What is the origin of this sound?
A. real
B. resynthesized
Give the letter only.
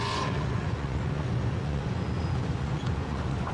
B